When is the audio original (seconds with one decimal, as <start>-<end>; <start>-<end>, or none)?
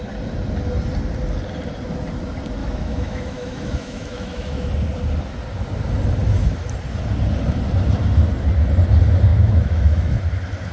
0.0-2.6; 4.7-9.3; 10.2-10.7